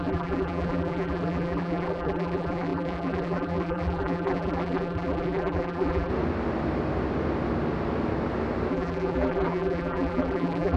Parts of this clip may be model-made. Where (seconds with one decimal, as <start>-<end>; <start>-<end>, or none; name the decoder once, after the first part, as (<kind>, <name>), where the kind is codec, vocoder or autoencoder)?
0.0-6.1 (vocoder, BigVGAN v2); 8.7-10.8